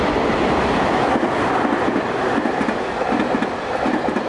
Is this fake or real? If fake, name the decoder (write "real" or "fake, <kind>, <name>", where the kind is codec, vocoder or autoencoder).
real